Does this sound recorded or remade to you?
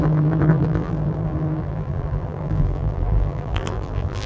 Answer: remade